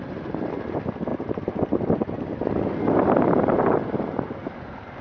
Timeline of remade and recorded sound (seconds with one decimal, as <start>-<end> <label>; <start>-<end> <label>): 0.0-5.0 recorded